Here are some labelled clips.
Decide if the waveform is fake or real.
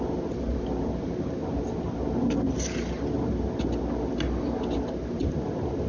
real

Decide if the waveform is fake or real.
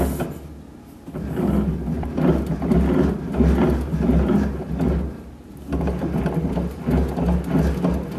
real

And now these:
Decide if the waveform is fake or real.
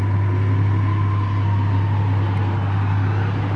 real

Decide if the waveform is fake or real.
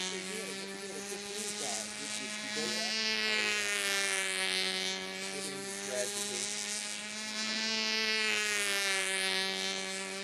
real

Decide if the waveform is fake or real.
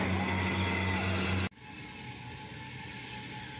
real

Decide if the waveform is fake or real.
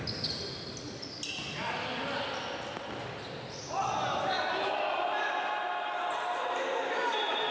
real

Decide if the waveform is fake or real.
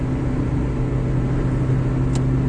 real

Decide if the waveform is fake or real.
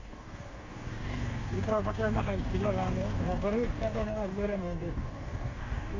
fake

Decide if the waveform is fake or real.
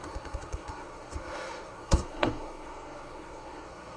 fake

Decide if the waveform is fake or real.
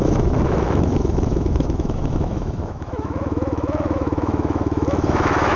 fake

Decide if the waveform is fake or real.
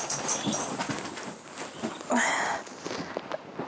real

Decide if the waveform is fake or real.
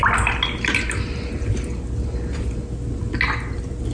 real